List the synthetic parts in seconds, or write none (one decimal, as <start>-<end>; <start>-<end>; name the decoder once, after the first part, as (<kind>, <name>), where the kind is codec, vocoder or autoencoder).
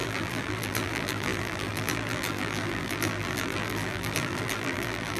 0.0-5.2 (vocoder, BigVGAN v2)